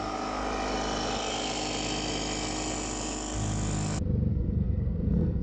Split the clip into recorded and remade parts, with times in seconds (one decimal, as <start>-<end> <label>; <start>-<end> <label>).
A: 0.0-4.3 recorded; 4.3-5.4 remade